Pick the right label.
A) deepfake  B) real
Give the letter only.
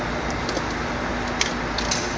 B